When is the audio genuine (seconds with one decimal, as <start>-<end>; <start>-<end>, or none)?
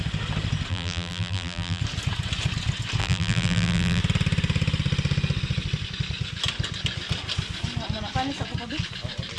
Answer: 0.0-0.7; 1.8-3.0; 4.0-9.4